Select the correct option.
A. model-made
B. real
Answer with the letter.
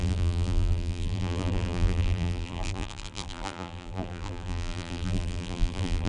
A